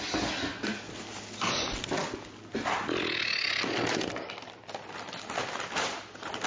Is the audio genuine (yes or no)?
yes